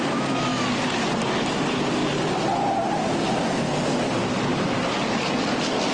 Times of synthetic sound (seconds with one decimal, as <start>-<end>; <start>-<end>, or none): none